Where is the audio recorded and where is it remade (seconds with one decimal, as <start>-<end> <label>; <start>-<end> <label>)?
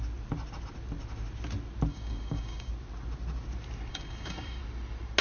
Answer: 0.0-1.9 recorded; 1.9-2.7 remade; 2.7-3.9 recorded; 3.9-4.6 remade; 4.6-5.2 recorded